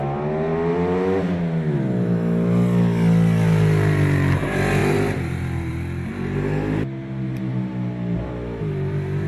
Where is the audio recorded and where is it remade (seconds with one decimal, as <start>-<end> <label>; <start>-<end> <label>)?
0.0-9.3 recorded